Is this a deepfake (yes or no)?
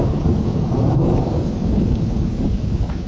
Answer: yes